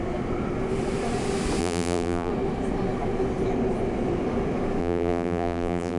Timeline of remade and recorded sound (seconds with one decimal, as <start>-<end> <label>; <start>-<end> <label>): 0.0-1.6 recorded; 1.6-2.3 remade; 2.3-4.8 recorded; 4.8-6.0 remade